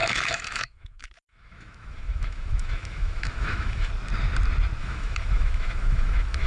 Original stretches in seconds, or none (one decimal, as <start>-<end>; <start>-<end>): 3.9-4.8